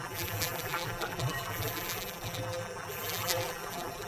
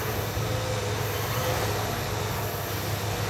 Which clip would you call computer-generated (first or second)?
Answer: first